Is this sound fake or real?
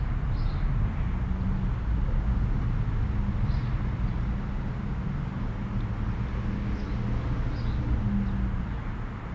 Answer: real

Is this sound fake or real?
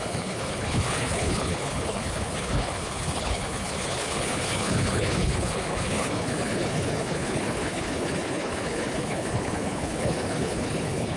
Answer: fake